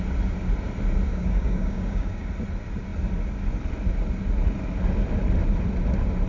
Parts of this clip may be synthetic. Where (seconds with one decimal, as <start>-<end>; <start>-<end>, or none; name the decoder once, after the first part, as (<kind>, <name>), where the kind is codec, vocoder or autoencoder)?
1.1-2.3 (codec, DAC)